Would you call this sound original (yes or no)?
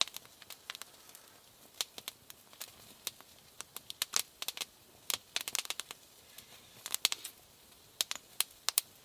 yes